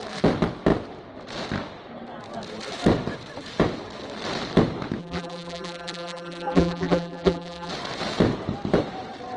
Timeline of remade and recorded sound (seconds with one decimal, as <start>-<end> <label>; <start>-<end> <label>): 0.0-5.0 recorded; 5.0-7.7 remade; 7.7-9.4 recorded